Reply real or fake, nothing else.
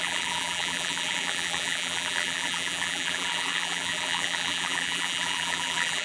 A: fake